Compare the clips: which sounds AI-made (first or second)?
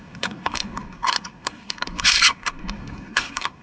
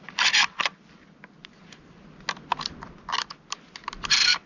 first